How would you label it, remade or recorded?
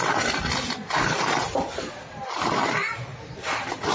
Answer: recorded